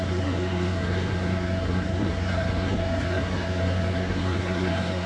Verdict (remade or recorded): remade